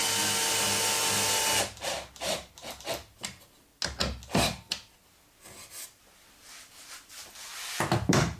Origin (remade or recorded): recorded